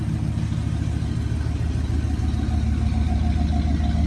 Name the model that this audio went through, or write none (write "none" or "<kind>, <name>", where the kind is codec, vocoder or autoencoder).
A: none